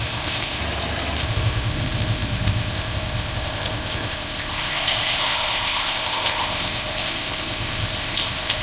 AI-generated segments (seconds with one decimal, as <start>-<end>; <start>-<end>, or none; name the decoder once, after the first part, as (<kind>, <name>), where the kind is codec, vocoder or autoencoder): 0.0-0.6 (codec, ZipCodec); 1.2-8.6